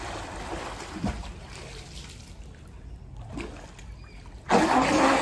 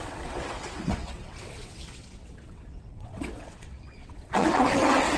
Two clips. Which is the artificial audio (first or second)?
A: second